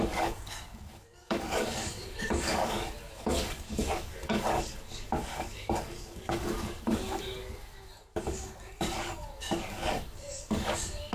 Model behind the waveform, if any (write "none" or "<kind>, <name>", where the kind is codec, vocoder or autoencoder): codec, DAC